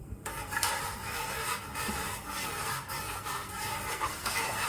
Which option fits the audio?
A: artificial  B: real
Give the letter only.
A